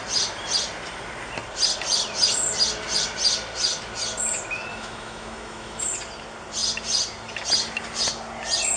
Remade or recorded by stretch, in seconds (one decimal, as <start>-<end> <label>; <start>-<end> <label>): 0.0-4.7 recorded; 4.7-5.8 remade; 5.8-8.8 recorded